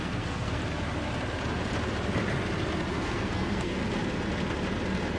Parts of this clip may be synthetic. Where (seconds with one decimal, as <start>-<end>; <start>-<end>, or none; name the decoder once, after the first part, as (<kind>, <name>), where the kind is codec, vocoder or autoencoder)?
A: 0.0-0.6 (codec, SNAC); 2.9-3.8